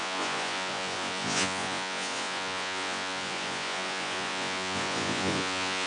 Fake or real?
fake